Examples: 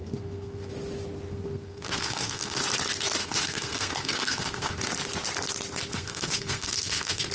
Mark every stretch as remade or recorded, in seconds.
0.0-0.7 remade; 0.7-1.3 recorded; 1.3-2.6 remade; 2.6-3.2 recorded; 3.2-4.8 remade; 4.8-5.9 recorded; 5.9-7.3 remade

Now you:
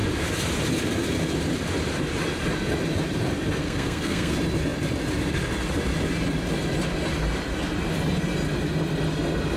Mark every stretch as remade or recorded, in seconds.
0.0-3.6 recorded; 3.6-4.3 remade; 4.3-9.6 recorded

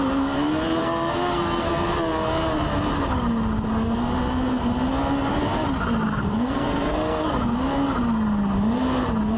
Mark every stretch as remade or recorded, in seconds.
0.0-0.8 recorded; 0.8-1.7 remade; 1.7-6.3 recorded; 6.3-7.3 remade; 7.3-9.4 recorded

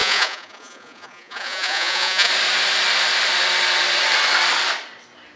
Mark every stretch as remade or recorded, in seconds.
0.0-2.3 remade; 2.3-5.4 recorded

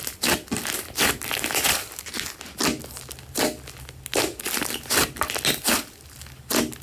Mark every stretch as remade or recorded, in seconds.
0.0-6.8 recorded

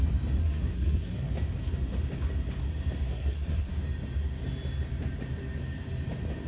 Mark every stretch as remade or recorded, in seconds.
0.0-0.4 recorded; 0.4-1.3 remade; 1.3-3.1 recorded; 3.1-3.7 remade; 3.7-6.5 recorded

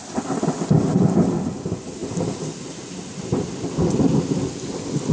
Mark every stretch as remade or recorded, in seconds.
0.0-5.1 recorded

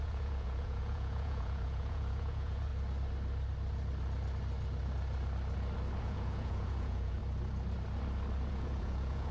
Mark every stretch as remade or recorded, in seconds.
0.0-2.7 remade; 2.7-6.0 recorded; 6.0-7.2 remade; 7.2-8.5 recorded; 8.5-9.3 remade